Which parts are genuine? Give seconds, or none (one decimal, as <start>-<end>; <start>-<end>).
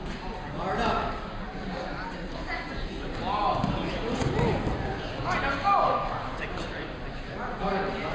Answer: 0.0-8.1